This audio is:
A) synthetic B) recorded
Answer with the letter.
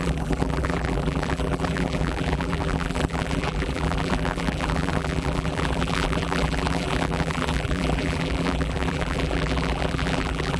A